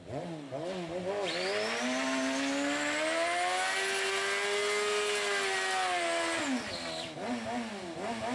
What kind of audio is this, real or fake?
real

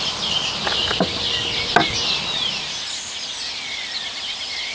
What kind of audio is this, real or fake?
real